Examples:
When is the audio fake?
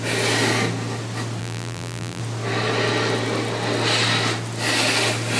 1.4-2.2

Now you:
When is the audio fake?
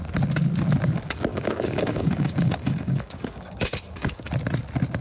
1.3-4.3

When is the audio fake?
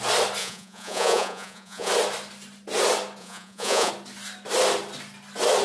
0.4-1.9; 3.2-3.9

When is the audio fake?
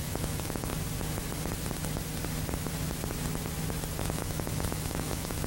0.0-0.7; 4.0-5.5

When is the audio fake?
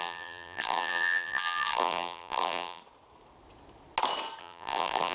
0.0-2.8; 4.4-5.1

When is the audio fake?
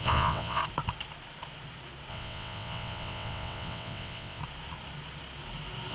0.0-0.6; 2.1-4.4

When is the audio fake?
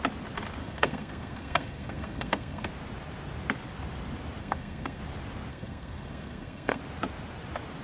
0.6-2.7; 4.4-5.0; 5.5-6.8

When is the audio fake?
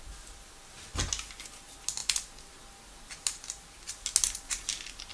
none